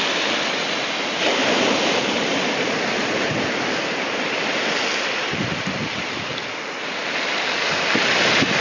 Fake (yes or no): no